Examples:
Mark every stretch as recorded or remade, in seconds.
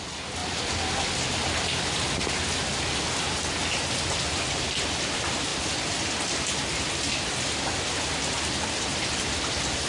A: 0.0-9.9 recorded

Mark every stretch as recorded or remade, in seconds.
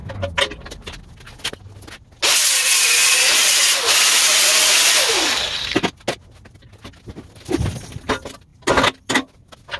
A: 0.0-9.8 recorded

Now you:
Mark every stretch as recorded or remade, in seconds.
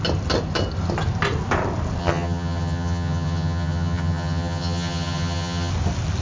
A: 0.0-2.0 recorded; 2.0-5.7 remade; 5.7-6.2 recorded